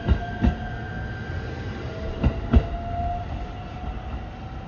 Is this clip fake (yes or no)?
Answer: no